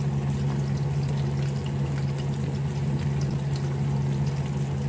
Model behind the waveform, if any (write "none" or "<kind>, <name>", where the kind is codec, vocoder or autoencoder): none